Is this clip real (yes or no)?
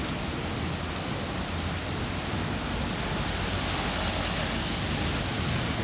yes